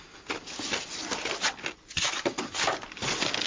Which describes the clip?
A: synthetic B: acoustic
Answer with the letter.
B